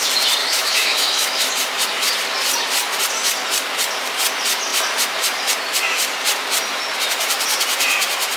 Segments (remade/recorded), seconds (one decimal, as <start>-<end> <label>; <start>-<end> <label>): 0.0-0.4 recorded; 0.4-1.5 remade; 1.5-8.4 recorded

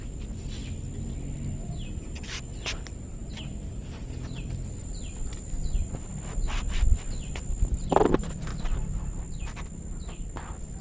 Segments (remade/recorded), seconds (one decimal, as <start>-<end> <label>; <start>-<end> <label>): 0.0-0.6 remade; 0.6-1.9 recorded; 1.9-6.1 remade; 6.1-7.8 recorded; 7.8-8.5 remade; 8.5-9.4 recorded; 9.4-10.8 remade

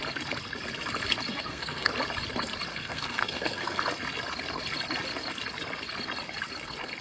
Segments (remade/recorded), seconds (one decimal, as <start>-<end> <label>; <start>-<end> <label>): 0.0-1.3 recorded; 1.3-1.9 remade; 1.9-2.7 recorded; 2.7-3.8 remade; 3.8-7.0 recorded

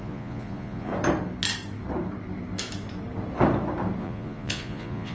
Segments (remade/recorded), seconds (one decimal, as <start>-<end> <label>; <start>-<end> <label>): 0.0-0.9 remade; 0.9-4.0 recorded; 4.0-5.1 remade